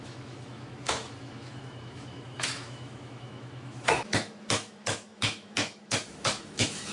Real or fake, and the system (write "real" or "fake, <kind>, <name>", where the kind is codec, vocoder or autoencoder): fake, autoencoder, DAC-VAE